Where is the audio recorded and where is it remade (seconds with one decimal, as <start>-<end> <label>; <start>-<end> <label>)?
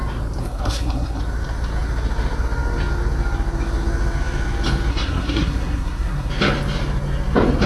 0.0-0.4 recorded; 0.4-1.2 remade; 1.2-4.9 recorded; 4.9-6.3 remade; 6.3-7.7 recorded